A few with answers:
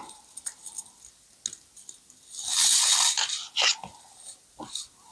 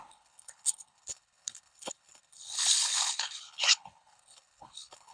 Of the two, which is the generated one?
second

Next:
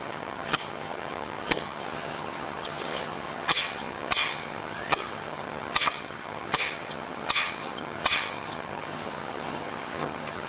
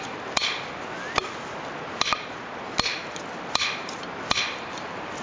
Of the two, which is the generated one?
first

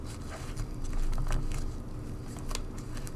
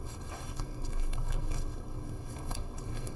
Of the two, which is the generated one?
second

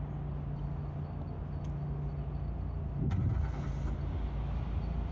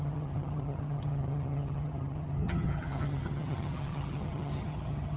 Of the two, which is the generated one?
second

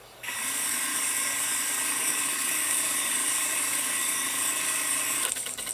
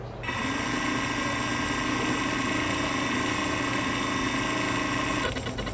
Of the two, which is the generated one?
first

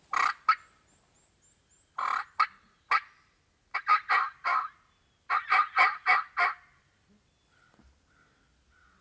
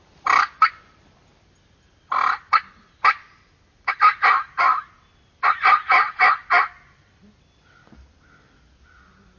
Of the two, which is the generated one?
second